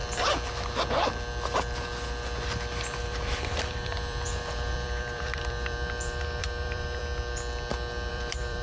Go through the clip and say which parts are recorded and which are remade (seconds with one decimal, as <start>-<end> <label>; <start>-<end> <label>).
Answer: 0.0-3.0 recorded; 3.0-7.0 remade; 7.0-8.1 recorded; 8.1-8.6 remade